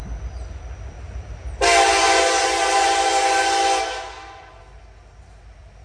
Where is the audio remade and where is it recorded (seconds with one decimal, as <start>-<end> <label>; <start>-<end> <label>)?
0.0-5.8 recorded